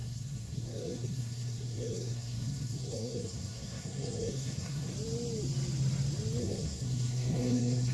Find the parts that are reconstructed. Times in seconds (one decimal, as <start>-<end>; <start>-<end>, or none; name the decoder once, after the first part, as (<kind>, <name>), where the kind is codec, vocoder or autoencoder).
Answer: 0.0-4.9 (codec, SNAC); 6.4-7.9